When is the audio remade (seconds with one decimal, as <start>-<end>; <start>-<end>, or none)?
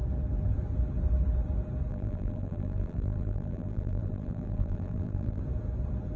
1.9-5.4